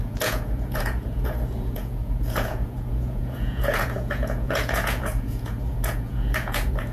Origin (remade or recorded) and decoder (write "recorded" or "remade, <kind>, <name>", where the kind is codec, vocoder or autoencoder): remade, vocoder, Vocos